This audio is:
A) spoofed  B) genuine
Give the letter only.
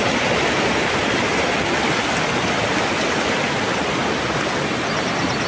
B